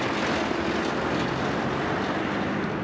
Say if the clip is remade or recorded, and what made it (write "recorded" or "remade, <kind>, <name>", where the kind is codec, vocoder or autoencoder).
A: recorded